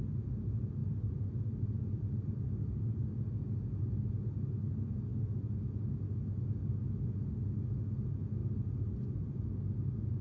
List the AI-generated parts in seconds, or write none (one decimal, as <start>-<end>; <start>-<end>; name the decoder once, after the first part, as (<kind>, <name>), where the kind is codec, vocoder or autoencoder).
0.8-2.6 (vocoder, BigVGAN v2); 8.4-10.2